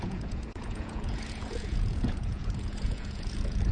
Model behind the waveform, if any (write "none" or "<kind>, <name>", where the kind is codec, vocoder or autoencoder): vocoder, Vocos